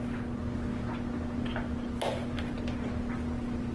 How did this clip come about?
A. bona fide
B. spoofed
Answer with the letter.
A